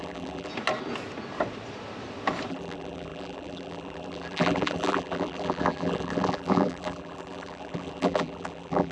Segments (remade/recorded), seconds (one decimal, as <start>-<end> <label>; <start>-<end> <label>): 0.0-0.5 remade; 0.5-2.5 recorded; 2.5-8.9 remade